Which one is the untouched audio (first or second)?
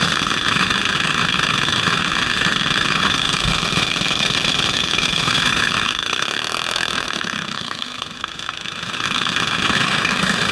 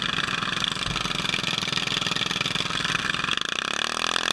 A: second